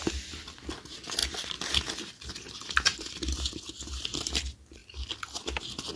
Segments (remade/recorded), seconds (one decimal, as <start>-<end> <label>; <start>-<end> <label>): 0.0-6.0 recorded